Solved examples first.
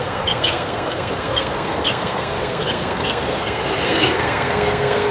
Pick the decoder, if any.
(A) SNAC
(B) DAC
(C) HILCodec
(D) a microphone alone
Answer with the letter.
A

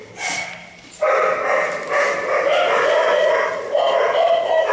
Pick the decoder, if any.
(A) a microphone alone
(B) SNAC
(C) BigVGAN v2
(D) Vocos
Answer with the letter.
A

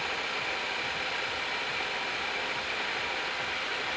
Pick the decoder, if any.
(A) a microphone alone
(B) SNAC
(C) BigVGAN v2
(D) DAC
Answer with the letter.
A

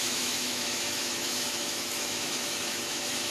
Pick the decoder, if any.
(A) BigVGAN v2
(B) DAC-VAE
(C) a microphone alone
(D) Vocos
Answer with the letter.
B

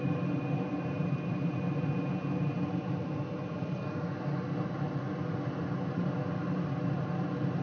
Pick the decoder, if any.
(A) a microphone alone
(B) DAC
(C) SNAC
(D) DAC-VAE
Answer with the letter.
A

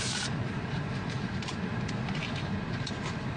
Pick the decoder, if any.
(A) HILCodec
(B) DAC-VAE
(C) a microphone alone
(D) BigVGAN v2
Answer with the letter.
D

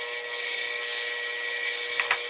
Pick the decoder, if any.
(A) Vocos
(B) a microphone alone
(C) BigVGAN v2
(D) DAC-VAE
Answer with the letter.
B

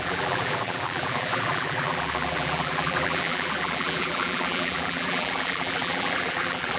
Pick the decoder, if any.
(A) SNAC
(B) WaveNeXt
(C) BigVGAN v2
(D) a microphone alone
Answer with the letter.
C